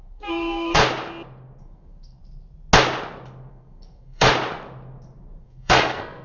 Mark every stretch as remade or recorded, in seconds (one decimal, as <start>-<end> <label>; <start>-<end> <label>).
0.0-0.8 remade; 0.8-1.6 recorded; 1.6-2.2 remade; 2.2-3.5 recorded; 3.5-4.3 remade; 4.3-5.4 recorded; 5.4-6.2 remade